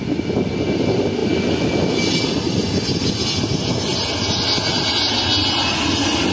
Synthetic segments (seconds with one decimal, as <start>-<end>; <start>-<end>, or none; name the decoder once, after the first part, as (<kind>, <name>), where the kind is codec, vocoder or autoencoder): none